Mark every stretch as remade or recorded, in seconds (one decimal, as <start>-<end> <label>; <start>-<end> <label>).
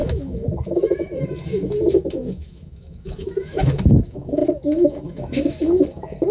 0.0-6.3 remade